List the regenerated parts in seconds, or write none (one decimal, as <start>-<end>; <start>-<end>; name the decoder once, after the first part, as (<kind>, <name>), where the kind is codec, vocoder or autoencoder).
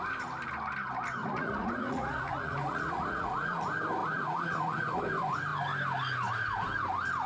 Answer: 1.2-3.6 (vocoder, Vocos); 4.0-5.0